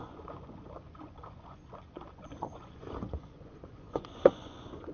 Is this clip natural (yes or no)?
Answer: no